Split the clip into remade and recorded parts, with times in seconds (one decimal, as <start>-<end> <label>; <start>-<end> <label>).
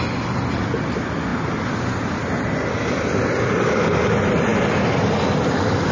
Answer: 0.0-5.9 recorded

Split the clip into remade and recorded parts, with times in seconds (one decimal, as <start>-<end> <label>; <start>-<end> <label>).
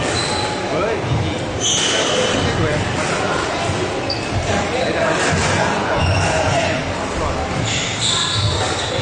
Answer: 0.0-5.4 recorded; 5.4-6.8 remade; 6.8-9.0 recorded